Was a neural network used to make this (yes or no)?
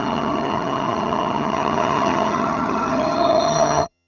yes